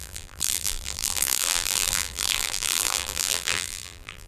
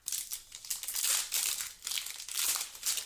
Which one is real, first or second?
second